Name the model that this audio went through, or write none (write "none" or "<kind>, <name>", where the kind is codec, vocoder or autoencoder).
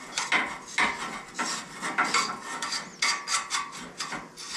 none